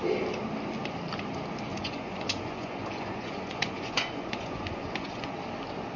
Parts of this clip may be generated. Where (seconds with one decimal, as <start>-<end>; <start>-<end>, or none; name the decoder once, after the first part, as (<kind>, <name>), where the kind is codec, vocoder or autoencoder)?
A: 1.7-5.3 (vocoder, Vocos)